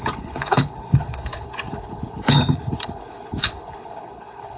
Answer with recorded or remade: remade